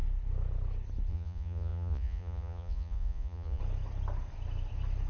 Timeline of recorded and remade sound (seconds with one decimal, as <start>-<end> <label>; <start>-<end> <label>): 0.0-1.1 recorded; 1.1-3.6 remade; 3.6-5.1 recorded